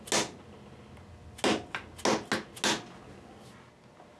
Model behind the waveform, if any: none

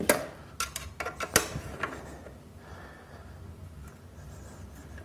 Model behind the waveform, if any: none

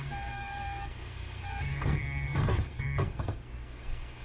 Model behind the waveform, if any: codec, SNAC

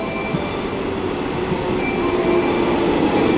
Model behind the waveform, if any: none